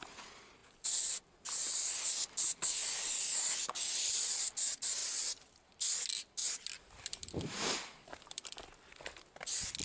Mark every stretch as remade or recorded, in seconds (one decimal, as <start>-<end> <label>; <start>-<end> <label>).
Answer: 0.0-2.8 recorded; 2.8-3.6 remade; 3.6-6.4 recorded; 6.4-9.2 remade; 9.2-9.8 recorded